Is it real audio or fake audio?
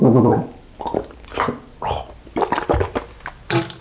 real